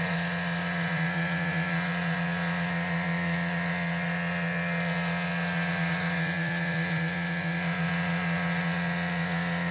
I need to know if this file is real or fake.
fake